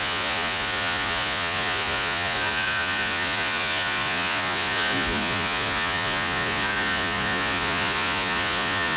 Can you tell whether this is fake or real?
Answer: fake